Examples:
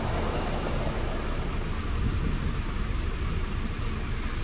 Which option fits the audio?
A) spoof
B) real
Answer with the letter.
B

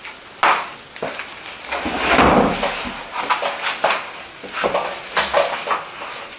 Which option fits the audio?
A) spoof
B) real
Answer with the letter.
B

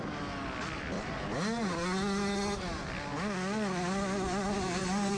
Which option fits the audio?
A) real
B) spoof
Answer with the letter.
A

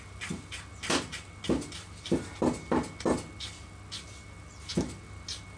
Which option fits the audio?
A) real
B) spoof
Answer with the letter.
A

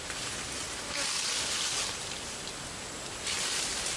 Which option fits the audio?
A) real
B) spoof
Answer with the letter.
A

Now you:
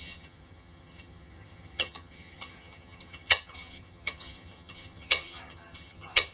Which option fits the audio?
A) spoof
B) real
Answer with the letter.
A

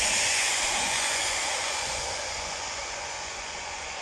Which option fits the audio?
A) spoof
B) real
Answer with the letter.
A